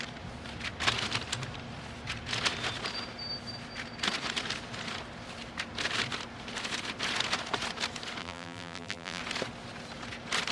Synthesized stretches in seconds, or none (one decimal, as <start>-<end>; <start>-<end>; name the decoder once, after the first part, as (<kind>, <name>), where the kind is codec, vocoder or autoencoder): 8.2-9.2 (vocoder, BigVGAN v2)